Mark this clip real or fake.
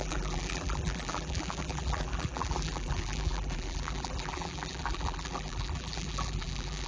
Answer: fake